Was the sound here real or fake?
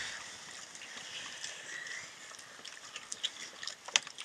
real